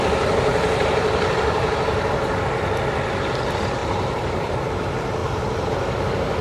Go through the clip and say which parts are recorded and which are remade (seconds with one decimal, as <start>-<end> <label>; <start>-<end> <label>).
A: 0.0-0.5 recorded; 0.5-2.3 remade; 2.3-3.8 recorded; 3.8-4.7 remade; 4.7-6.4 recorded

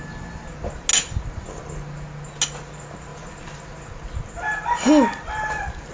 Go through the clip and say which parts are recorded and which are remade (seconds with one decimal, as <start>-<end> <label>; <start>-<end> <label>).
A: 0.0-5.9 recorded

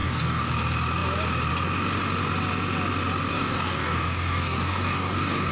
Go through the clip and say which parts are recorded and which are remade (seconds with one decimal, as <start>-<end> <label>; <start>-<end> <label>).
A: 0.0-0.5 remade; 0.5-3.3 recorded; 3.3-5.5 remade

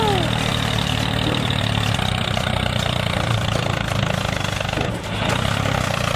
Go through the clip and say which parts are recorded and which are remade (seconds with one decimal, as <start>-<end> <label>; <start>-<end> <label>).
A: 0.0-0.5 recorded; 0.5-4.2 remade; 4.2-6.2 recorded

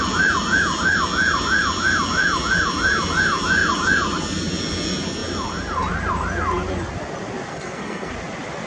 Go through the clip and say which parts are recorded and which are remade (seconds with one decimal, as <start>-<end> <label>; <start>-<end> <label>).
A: 0.0-7.5 recorded; 7.5-8.1 remade; 8.1-8.7 recorded